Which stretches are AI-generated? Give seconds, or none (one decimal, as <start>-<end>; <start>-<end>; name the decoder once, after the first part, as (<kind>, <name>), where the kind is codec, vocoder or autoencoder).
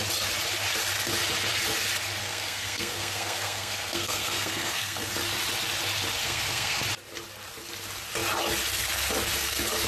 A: 2.2-5.1 (codec, SNAC); 6.2-6.8